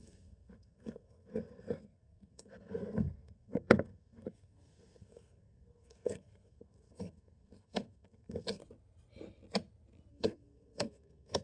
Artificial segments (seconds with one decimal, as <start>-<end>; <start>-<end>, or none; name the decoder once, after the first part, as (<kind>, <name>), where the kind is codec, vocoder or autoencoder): 0.0-8.6 (codec, SNAC); 10.1-11.4

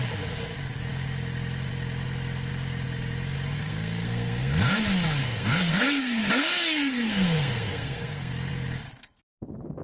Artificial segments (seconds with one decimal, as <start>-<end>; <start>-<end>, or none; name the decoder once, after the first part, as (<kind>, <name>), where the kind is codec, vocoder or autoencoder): 3.6-4.7 (codec, SNAC); 5.2-8.3